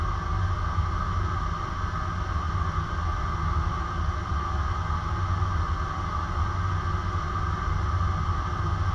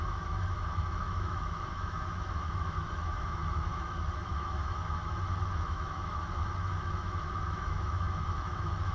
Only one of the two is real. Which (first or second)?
first